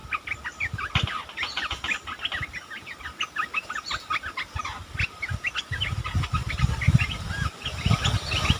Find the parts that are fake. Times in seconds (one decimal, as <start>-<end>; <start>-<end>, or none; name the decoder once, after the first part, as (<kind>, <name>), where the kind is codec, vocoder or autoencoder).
0.0-1.1 (vocoder, BigVGAN v2)